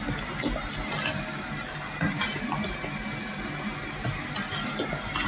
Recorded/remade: recorded